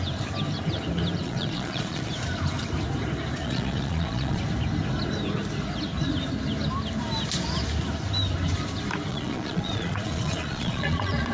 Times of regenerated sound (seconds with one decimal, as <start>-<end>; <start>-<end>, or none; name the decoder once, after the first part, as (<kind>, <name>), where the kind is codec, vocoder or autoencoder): 1.2-2.1 (vocoder, Vocos); 3.4-4.4; 9.1-11.3